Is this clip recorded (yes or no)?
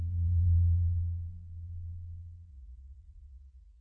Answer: no